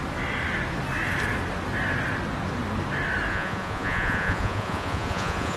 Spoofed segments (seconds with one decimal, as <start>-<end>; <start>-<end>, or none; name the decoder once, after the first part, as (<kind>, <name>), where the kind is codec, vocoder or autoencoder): 3.3-5.6 (vocoder, Vocos)